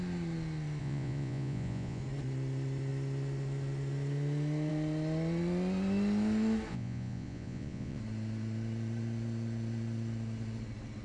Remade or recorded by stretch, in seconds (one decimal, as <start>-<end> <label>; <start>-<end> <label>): 0.0-0.8 recorded; 0.8-2.0 remade; 2.0-6.7 recorded; 6.7-8.0 remade; 8.0-11.0 recorded